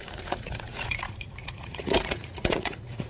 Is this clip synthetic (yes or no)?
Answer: yes